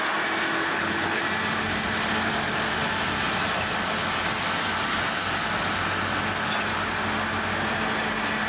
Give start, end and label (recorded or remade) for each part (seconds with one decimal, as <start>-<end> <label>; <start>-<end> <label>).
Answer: 0.0-0.6 recorded; 0.6-1.2 remade; 1.2-8.5 recorded